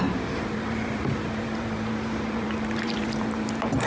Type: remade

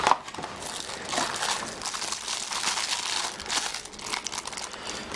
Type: recorded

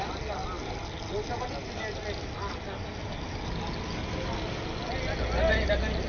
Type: recorded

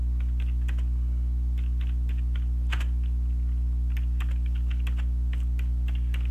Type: recorded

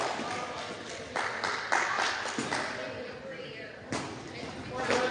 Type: recorded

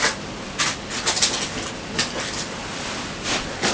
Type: recorded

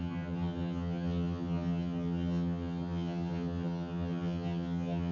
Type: remade